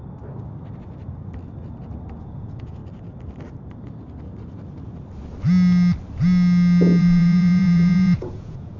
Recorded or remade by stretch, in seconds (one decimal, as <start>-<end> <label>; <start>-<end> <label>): 0.0-2.2 recorded; 2.2-2.8 remade; 2.8-7.0 recorded; 7.0-8.8 remade